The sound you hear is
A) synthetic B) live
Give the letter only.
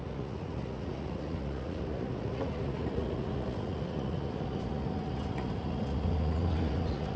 A